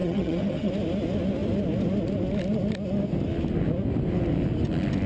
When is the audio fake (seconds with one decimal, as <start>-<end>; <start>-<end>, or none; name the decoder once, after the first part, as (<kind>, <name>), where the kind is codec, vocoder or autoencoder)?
0.0-0.7 (vocoder, HiFi-GAN)